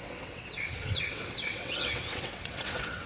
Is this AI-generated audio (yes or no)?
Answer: yes